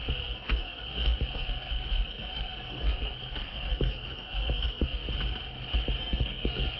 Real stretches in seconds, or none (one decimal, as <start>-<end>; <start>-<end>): 5.0-6.0